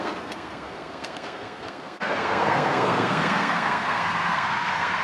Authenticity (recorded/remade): remade